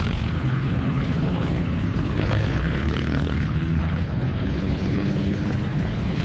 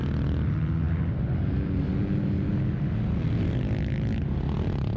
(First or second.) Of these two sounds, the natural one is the second